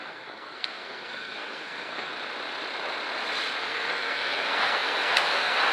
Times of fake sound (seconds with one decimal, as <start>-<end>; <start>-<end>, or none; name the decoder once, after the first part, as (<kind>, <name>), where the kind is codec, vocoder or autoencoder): 0.0-2.1 (codec, SNAC); 3.6-5.7